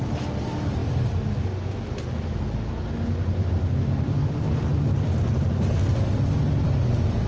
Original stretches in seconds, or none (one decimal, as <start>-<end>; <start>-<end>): 0.8-3.5